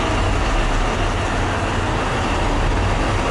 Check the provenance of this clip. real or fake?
real